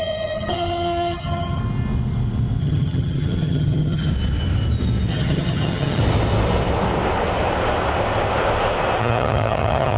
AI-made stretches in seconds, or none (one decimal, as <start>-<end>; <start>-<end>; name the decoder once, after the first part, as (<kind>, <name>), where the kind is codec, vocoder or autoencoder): 0.0-1.6 (vocoder, HiFi-GAN); 2.6-4.1; 5.1-6.0; 9.0-10.0